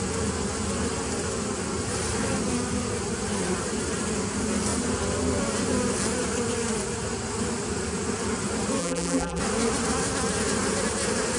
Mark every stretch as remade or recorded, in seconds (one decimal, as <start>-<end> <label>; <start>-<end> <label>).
0.0-8.8 recorded; 8.8-9.4 remade; 9.4-11.4 recorded